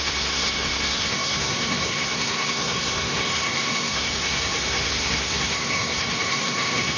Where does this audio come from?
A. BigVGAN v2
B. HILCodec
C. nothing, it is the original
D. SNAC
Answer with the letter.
D